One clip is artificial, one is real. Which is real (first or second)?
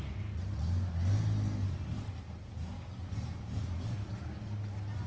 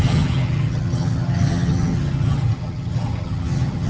first